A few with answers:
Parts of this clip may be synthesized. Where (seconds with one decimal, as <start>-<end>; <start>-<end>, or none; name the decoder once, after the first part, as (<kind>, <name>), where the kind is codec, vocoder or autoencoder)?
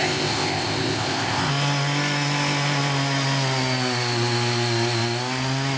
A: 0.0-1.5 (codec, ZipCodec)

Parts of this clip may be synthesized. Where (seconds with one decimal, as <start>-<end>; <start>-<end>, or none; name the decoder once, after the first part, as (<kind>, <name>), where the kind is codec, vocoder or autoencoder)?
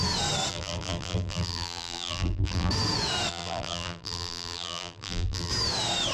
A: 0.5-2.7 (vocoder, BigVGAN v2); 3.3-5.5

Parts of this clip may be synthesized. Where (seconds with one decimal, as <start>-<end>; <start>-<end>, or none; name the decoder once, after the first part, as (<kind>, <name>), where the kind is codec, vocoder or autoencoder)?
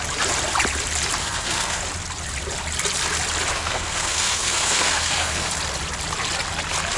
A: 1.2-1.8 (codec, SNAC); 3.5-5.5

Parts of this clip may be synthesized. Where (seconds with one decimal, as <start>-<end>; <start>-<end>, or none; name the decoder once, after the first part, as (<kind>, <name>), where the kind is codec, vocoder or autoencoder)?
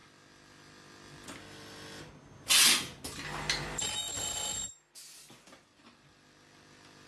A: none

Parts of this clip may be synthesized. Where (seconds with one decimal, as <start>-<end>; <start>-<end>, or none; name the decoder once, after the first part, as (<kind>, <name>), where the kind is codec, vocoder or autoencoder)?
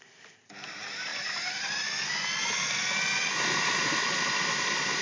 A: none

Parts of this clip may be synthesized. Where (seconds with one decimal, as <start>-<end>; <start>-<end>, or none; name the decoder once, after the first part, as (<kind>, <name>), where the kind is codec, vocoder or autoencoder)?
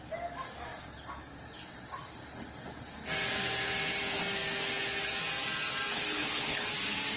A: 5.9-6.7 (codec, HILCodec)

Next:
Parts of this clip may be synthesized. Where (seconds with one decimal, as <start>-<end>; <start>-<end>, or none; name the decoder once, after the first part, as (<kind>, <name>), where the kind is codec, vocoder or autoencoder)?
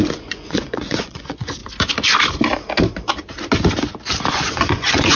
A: 0.0-1.6 (vocoder, Vocos); 4.3-5.2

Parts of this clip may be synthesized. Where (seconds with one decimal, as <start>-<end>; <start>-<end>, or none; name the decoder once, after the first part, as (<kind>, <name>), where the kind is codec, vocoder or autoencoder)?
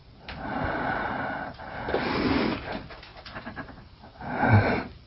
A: none